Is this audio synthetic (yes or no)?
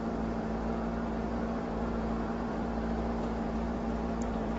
yes